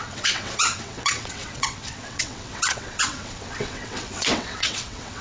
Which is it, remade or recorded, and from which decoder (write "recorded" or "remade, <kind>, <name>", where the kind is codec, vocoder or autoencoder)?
remade, vocoder, WaveNeXt